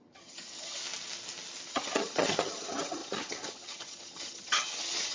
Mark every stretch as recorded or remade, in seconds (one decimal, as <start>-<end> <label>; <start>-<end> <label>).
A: 0.0-0.8 remade; 0.8-1.7 recorded; 1.7-5.1 remade